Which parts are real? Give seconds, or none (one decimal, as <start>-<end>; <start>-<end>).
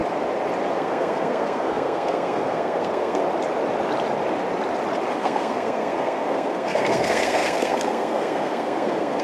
0.0-0.7; 3.2-5.1